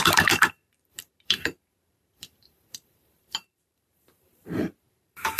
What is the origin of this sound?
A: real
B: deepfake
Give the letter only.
B